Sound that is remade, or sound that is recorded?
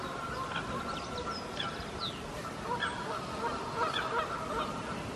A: recorded